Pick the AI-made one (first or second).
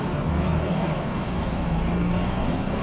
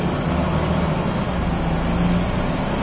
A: first